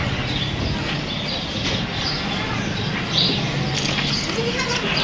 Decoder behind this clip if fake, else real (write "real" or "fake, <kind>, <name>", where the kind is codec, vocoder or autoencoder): real